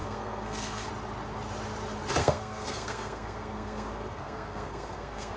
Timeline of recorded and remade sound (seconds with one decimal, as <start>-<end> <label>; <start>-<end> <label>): 0.0-0.9 remade; 0.9-2.2 recorded; 2.2-5.4 remade